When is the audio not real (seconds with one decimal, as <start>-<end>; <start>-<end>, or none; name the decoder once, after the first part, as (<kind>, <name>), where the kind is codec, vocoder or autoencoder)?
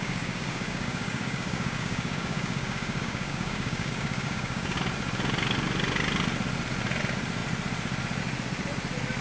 0.0-4.8 (codec, DAC)